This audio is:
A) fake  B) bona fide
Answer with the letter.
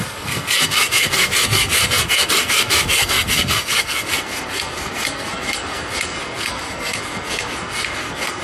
A